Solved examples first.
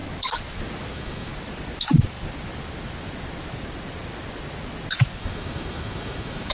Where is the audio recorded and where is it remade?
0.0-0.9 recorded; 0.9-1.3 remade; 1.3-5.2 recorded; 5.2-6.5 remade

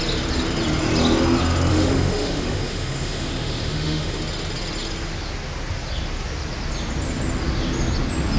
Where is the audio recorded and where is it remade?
0.0-1.7 recorded; 1.7-4.2 remade; 4.2-8.4 recorded

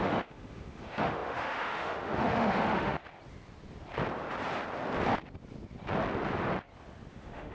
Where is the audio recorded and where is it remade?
0.0-3.0 remade; 3.0-7.1 recorded; 7.1-7.5 remade

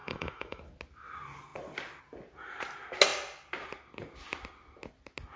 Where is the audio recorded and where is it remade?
0.0-0.6 remade; 0.6-5.4 recorded

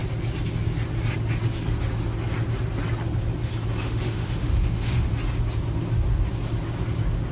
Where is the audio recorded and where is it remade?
0.0-3.8 recorded; 3.8-5.1 remade; 5.1-7.3 recorded

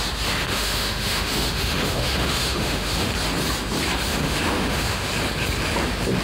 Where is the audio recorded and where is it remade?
0.0-0.4 recorded; 0.4-3.1 remade; 3.1-4.1 recorded; 4.1-5.1 remade; 5.1-6.2 recorded

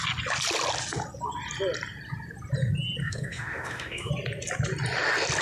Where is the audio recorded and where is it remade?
0.0-3.0 recorded; 3.0-4.1 remade; 4.1-5.4 recorded